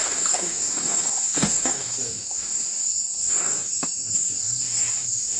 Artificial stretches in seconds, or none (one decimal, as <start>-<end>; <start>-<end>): 0.0-5.4

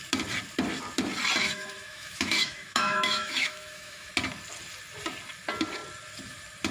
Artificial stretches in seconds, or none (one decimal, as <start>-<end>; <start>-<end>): 1.4-4.1

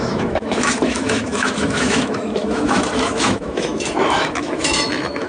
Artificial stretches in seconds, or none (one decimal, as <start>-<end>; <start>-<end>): 0.0-5.3

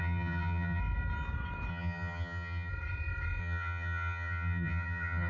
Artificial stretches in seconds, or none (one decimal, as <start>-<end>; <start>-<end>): 0.0-0.8; 1.7-2.7; 3.4-5.3

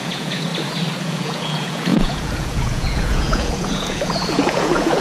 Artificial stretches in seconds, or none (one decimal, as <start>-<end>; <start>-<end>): 0.0-0.5; 1.0-5.0

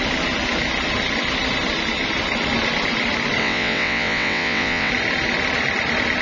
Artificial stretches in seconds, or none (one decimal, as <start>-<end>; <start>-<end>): 3.4-4.9